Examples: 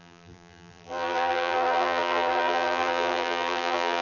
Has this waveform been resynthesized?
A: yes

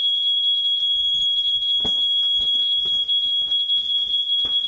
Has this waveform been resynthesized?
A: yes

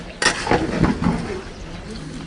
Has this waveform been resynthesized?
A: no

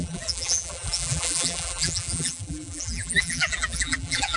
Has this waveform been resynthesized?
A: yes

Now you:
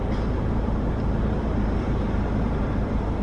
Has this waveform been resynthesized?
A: yes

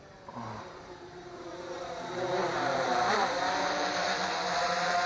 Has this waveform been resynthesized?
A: yes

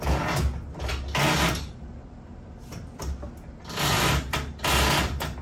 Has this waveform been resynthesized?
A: no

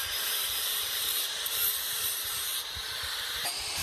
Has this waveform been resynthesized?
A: yes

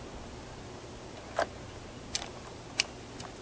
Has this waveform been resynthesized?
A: no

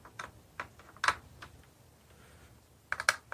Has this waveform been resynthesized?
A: no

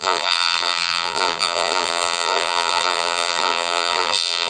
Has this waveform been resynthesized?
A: yes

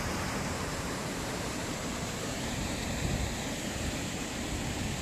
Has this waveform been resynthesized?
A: yes